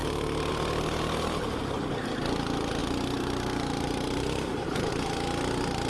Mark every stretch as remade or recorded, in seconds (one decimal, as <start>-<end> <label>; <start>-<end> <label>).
0.0-2.8 recorded; 2.8-4.9 remade; 4.9-5.9 recorded